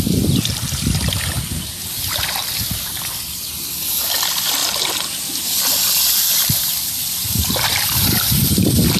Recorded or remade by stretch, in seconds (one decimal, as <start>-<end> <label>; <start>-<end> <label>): 0.0-9.0 recorded